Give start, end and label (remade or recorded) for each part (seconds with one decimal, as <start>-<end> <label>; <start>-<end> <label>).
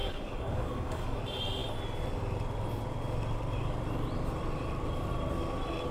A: 0.0-1.2 remade; 1.2-5.9 recorded